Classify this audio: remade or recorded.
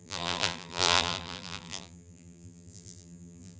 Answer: remade